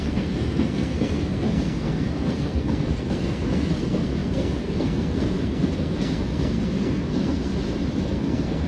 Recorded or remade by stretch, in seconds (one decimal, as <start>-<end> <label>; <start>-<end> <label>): 0.0-7.5 remade; 7.5-8.0 recorded; 8.0-8.7 remade